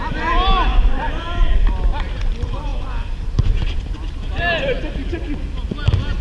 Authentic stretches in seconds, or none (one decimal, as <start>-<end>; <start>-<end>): 0.0-0.7; 1.5-6.2